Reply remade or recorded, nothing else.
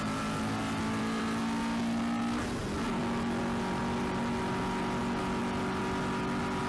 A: recorded